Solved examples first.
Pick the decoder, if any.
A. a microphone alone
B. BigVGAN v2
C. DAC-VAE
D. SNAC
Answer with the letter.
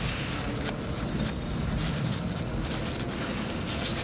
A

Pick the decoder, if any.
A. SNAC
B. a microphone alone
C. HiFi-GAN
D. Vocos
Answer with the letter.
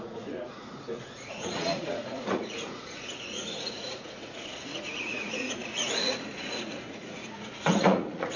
D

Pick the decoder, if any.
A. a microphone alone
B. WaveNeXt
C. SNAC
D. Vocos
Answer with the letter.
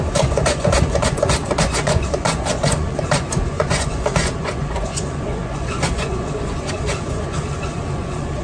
D